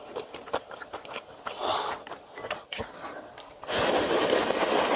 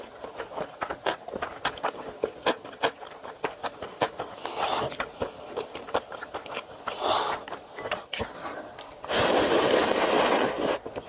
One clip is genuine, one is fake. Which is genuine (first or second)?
second